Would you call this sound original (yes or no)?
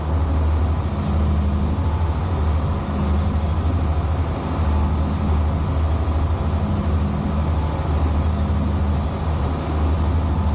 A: yes